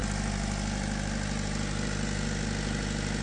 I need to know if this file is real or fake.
real